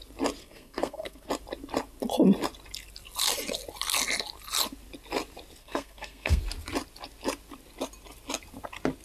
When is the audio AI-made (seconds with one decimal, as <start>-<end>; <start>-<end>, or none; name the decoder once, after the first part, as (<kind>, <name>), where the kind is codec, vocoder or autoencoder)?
0.4-1.3 (codec, SNAC); 5.6-6.4